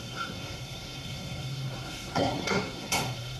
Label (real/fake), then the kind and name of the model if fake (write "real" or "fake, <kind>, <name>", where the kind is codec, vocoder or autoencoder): fake, codec, SNAC